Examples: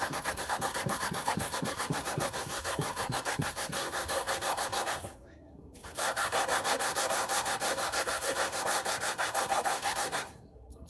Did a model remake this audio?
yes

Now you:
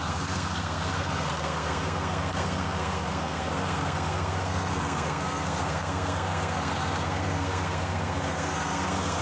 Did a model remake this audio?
yes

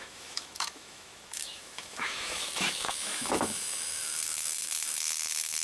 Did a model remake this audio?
yes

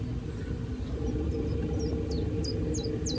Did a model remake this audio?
no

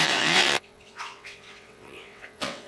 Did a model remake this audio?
yes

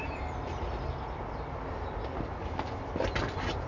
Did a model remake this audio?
no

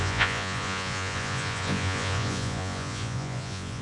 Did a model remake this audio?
yes